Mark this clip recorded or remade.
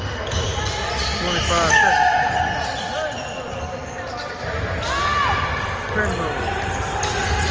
recorded